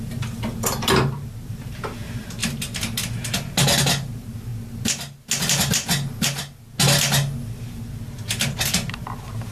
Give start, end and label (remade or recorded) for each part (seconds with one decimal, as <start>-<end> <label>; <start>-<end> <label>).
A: 0.0-2.4 remade; 2.4-3.9 recorded; 3.9-4.5 remade; 4.5-8.9 recorded; 8.9-9.5 remade